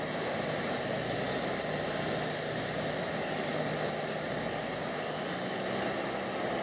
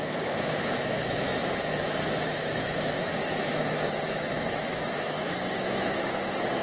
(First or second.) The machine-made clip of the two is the second